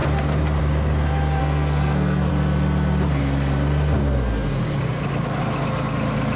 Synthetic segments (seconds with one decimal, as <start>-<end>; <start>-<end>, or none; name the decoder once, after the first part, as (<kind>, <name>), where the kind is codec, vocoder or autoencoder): 1.4-2.3 (codec, SNAC)